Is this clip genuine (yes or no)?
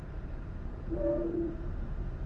no